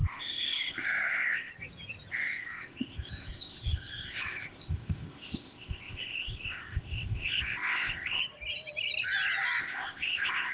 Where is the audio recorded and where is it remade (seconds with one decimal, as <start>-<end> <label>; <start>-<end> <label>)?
0.0-1.5 remade; 1.5-2.1 recorded; 2.1-8.2 remade; 8.2-9.6 recorded; 9.6-10.5 remade